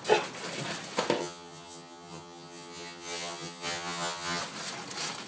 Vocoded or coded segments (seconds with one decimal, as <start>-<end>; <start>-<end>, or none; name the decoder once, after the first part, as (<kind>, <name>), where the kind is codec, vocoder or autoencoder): 1.2-4.4 (vocoder, HiFi-GAN)